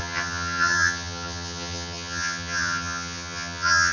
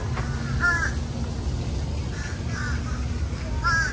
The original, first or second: second